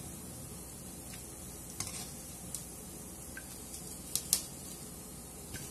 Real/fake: real